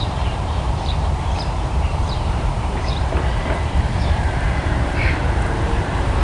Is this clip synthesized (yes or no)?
yes